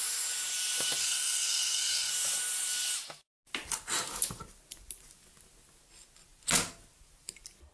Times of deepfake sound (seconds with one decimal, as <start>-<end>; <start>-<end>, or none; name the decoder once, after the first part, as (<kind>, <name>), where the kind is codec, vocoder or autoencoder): 1.0-2.1 (codec, SNAC)